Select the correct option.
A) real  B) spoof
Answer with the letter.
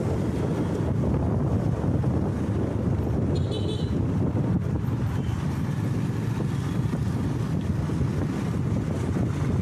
A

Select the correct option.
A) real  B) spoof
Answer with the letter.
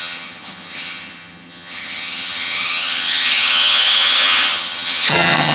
B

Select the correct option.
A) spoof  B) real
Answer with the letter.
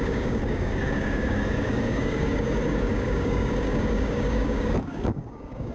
A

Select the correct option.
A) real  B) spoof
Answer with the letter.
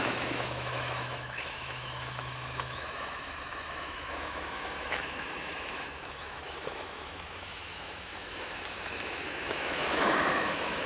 B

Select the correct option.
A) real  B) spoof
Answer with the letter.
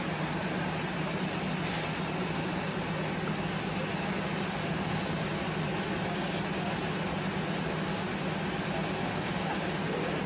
A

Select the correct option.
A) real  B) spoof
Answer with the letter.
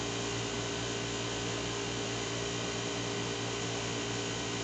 A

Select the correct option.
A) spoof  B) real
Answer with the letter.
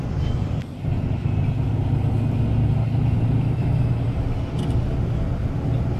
B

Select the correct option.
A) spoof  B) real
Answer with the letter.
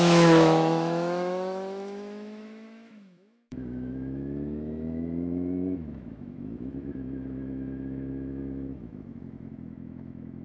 A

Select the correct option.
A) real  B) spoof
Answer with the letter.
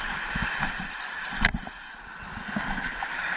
A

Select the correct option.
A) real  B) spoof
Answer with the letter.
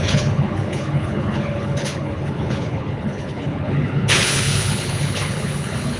B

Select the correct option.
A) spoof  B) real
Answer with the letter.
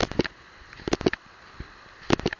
B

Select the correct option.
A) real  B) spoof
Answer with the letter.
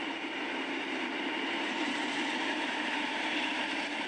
B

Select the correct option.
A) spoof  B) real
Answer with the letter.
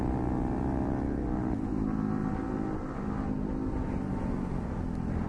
B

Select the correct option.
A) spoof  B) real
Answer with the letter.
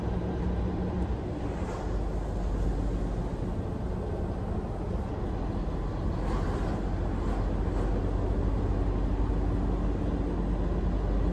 B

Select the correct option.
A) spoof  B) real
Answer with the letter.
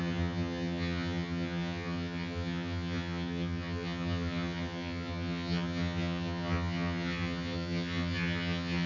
A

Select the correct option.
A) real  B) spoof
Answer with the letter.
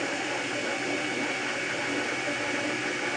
A